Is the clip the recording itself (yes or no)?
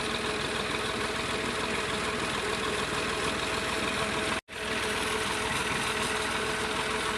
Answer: yes